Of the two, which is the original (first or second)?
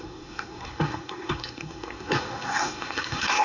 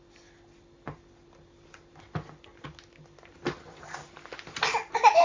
second